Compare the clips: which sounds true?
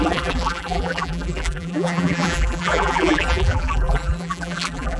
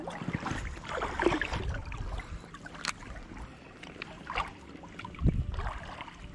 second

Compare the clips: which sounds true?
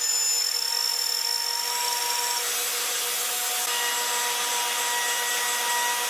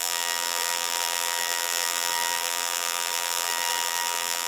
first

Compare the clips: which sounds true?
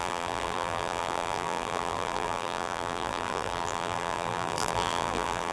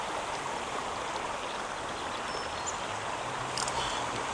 second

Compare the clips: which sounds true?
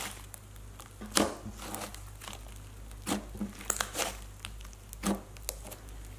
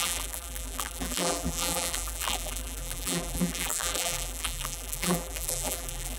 first